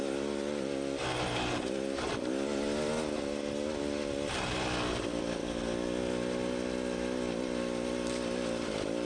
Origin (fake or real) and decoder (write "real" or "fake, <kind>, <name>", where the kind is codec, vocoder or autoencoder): real